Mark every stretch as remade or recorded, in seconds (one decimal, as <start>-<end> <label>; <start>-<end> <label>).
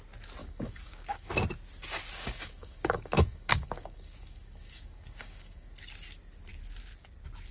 0.0-0.4 recorded; 0.4-1.3 remade; 1.3-2.1 recorded; 2.1-5.7 remade; 5.7-7.5 recorded